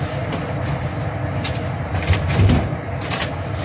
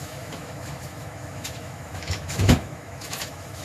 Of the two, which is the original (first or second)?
first